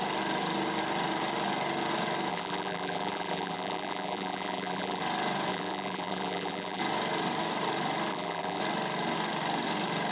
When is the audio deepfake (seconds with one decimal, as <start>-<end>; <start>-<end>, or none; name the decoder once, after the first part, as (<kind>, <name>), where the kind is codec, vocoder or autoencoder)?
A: 2.3-5.0 (vocoder, BigVGAN v2); 5.5-6.8; 8.1-8.6